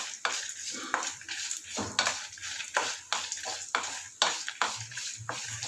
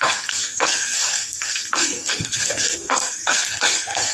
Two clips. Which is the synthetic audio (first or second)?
second